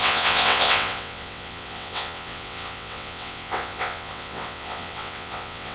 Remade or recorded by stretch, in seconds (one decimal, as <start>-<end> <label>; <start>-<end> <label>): 0.0-5.7 remade